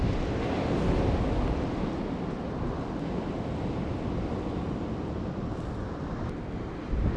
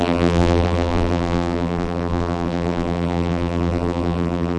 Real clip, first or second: first